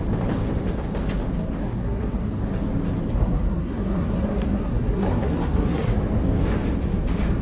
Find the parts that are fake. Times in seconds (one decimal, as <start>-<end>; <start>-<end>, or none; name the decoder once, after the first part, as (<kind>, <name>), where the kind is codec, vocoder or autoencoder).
1.6-2.3 (codec, SNAC); 3.1-6.0